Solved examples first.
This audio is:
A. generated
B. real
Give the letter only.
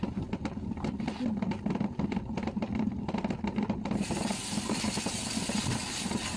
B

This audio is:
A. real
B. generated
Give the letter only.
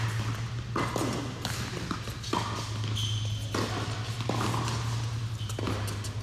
A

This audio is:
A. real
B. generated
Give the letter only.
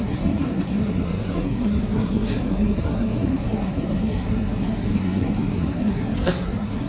B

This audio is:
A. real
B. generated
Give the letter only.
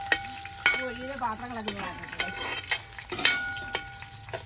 A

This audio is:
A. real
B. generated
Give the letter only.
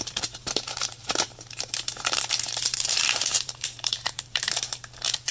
B